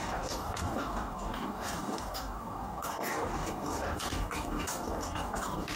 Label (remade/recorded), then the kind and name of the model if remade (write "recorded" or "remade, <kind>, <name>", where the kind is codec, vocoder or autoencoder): remade, codec, DAC